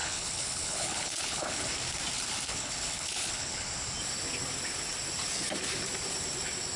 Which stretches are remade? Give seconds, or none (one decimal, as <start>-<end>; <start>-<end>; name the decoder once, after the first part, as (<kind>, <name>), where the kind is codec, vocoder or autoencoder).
0.0-1.7 (codec, HILCodec); 2.5-3.7